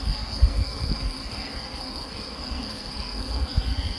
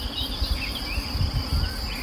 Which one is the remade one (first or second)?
first